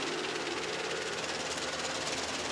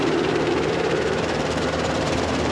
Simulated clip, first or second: second